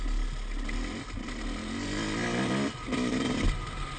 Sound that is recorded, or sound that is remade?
recorded